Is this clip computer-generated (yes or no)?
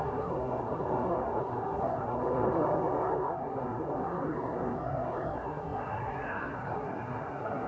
yes